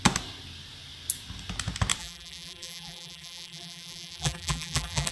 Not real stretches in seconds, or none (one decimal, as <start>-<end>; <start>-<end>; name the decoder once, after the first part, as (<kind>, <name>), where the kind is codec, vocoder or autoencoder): 2.0-5.1 (vocoder, BigVGAN v2)